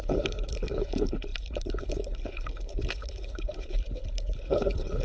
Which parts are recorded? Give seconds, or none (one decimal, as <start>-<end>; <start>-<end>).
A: none